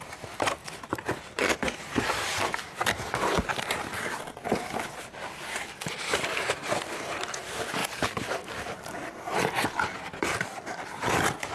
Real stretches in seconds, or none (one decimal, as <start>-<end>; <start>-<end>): 0.0-0.6; 1.5-7.8; 9.5-11.5